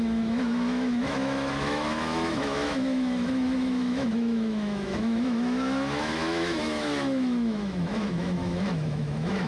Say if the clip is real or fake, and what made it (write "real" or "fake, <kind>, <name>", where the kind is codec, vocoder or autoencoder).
fake, autoencoder, DAC-VAE